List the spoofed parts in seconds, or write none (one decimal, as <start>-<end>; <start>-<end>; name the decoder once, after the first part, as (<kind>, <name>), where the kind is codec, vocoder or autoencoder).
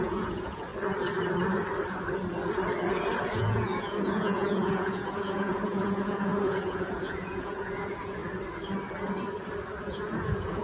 0.0-0.7 (vocoder, Vocos); 3.2-8.2; 9.8-10.6